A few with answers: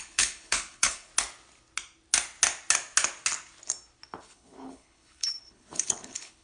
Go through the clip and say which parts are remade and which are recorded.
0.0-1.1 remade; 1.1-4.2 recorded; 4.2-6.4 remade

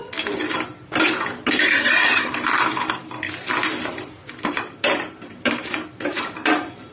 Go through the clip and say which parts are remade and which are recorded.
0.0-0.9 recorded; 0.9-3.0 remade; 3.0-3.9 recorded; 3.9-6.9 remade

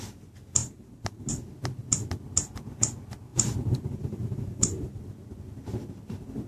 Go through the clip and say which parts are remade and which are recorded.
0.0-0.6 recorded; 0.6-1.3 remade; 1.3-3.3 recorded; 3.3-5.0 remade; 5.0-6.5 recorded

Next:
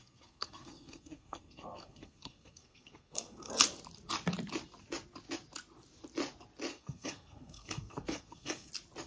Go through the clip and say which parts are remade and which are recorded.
0.0-3.5 remade; 3.5-6.7 recorded; 6.7-8.7 remade; 8.7-9.1 recorded